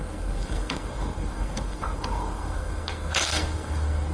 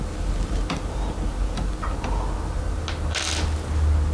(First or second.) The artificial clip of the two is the first